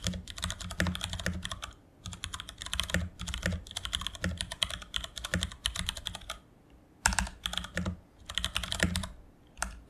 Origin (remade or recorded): recorded